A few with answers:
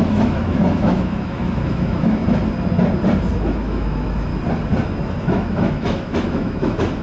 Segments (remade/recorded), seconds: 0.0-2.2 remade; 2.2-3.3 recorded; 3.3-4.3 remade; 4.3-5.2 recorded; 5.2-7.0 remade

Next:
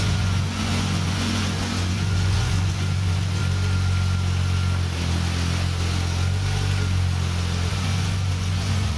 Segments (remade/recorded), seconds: 0.0-3.4 remade; 3.4-7.7 recorded; 7.7-9.0 remade

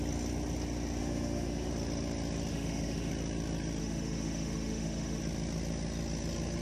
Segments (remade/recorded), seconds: 0.0-1.0 recorded; 1.0-1.7 remade; 1.7-2.5 recorded; 2.5-3.1 remade; 3.1-3.8 recorded; 3.8-5.2 remade; 5.2-6.6 recorded

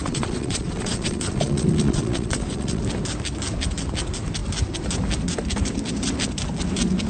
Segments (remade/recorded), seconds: 0.0-2.8 remade; 2.8-7.1 recorded

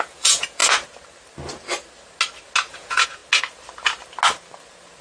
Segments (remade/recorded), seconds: 0.0-0.6 remade; 0.6-2.7 recorded; 2.7-3.2 remade; 3.2-5.0 recorded